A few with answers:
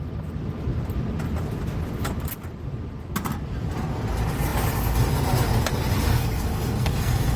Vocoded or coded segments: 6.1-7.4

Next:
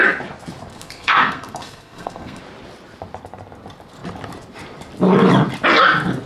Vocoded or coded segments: 0.7-2.4